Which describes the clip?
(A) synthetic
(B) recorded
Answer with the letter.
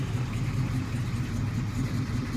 B